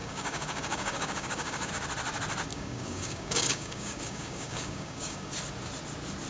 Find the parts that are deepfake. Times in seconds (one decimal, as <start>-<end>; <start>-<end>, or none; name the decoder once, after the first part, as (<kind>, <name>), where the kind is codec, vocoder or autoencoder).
0.0-1.7 (codec, DAC); 2.5-5.3